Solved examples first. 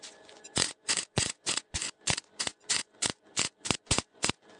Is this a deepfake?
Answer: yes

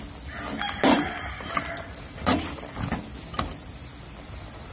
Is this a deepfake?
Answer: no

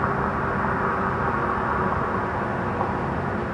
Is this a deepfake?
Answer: no